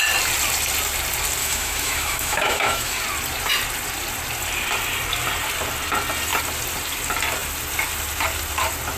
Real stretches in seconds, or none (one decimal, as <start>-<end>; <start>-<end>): 0.0-1.4; 3.0-9.0

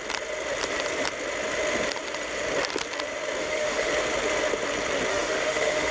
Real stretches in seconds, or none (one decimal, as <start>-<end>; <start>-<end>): 0.0-3.4; 3.9-5.1

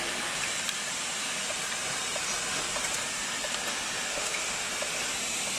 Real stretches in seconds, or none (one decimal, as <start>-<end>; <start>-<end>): 0.0-4.1; 4.7-5.6

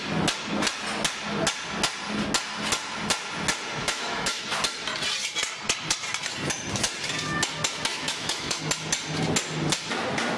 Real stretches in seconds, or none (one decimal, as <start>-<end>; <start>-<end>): 0.0-3.8; 4.4-7.9; 8.6-10.4

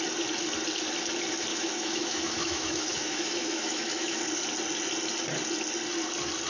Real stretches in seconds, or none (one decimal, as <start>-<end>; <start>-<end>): 0.0-1.5; 4.2-6.5

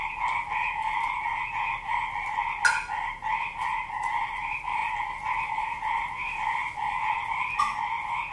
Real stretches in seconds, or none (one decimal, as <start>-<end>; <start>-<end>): 0.0-8.3

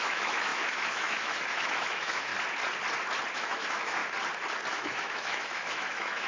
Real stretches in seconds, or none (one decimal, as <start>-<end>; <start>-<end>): 2.3-3.3; 4.0-4.7